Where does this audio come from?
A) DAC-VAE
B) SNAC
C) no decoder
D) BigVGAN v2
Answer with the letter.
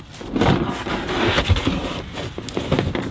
C